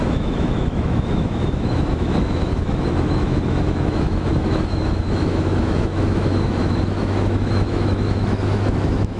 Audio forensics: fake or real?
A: fake